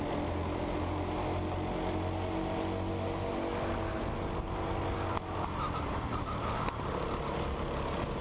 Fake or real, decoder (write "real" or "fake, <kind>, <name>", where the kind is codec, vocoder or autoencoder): real